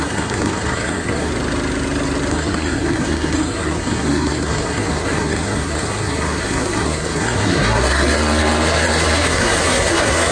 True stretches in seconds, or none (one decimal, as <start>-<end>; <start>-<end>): 1.3-2.3